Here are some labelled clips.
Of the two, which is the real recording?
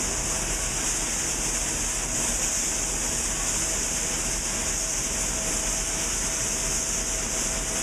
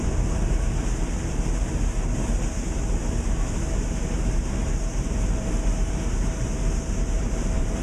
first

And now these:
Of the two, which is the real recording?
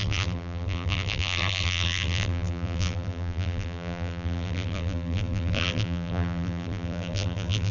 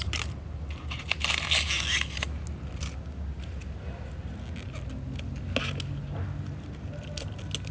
second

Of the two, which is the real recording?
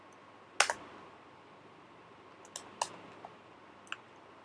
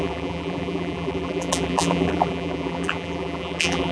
first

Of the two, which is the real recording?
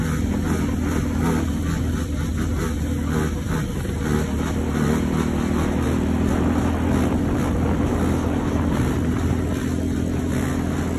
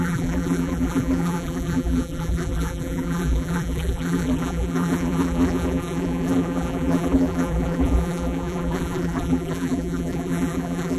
first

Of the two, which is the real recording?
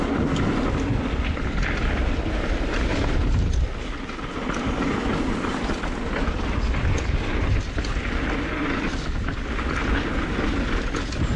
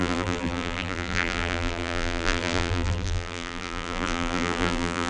first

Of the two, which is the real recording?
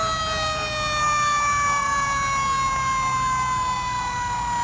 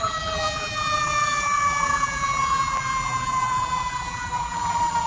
first